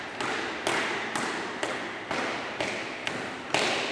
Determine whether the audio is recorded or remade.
recorded